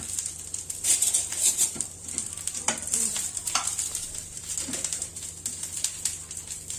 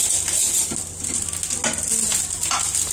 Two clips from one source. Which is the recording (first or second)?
second